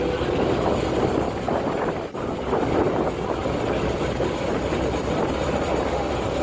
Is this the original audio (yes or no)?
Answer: no